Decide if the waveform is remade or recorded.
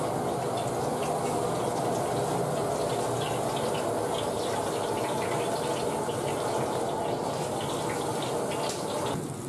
recorded